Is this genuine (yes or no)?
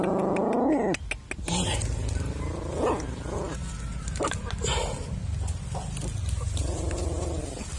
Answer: yes